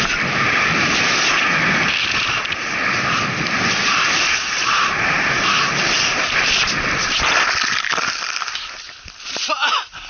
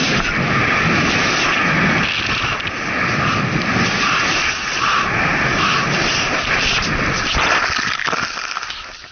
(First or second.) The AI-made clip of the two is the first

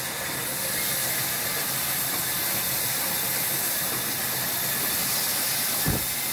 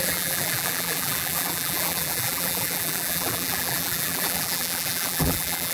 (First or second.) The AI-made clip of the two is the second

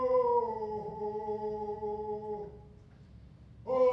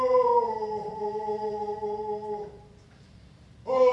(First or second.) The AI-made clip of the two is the second